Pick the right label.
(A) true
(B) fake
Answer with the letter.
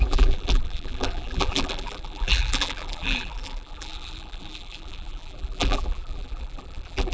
B